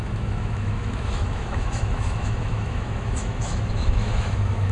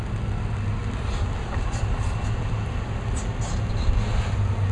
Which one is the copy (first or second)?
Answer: first